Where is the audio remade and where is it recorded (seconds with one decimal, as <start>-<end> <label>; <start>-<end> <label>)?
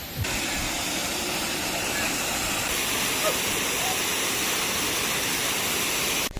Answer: 0.0-1.0 recorded; 1.0-4.8 remade; 4.8-6.4 recorded